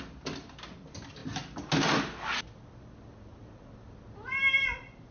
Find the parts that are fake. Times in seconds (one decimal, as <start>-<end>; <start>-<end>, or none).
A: none